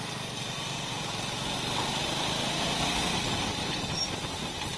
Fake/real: real